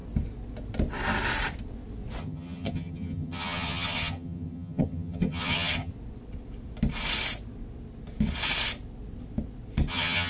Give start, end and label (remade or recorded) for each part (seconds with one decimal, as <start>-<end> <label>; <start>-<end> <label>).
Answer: 0.0-2.2 recorded; 2.2-5.9 remade; 5.9-9.9 recorded; 9.9-10.3 remade